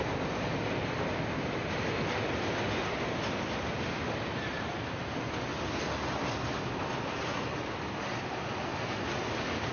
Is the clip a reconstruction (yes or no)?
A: no